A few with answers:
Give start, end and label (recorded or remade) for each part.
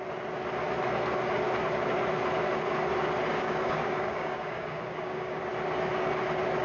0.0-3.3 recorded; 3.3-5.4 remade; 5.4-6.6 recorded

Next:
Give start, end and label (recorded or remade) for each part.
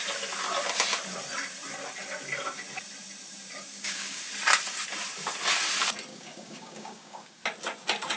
0.0-3.6 recorded; 3.6-4.2 remade; 4.2-6.1 recorded; 6.1-7.4 remade; 7.4-8.2 recorded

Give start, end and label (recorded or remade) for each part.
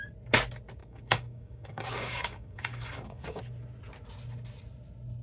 0.0-0.8 recorded; 0.8-3.4 remade; 3.4-5.2 recorded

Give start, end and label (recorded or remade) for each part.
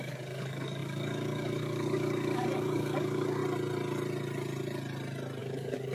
0.0-3.4 remade; 3.4-5.4 recorded; 5.4-5.9 remade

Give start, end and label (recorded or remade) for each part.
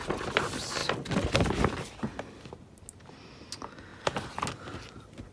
0.0-5.3 recorded